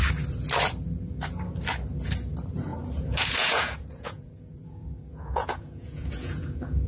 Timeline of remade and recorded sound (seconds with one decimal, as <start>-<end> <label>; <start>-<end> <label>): 0.0-2.7 recorded; 2.7-6.9 remade